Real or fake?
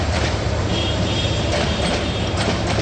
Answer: fake